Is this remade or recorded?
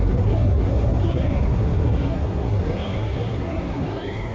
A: remade